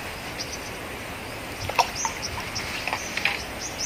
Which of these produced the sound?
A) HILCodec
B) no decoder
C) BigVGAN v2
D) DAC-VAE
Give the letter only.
B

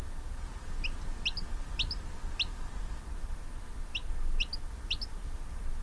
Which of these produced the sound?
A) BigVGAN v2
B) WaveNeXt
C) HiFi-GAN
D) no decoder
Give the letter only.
D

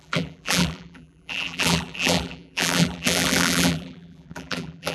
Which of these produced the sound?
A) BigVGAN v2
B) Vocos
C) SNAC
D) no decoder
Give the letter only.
A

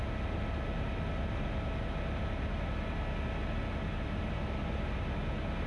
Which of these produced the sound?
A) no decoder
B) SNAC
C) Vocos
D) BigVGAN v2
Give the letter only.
A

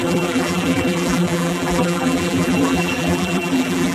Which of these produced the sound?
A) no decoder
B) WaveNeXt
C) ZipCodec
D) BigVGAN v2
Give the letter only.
D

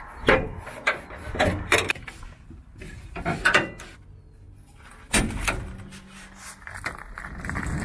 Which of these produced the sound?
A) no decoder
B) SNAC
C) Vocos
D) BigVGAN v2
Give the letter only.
A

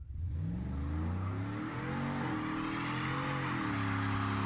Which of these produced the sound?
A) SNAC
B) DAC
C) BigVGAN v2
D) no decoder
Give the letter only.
D